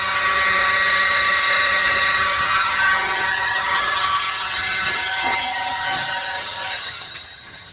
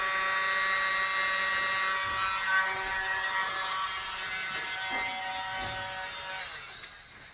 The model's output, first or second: first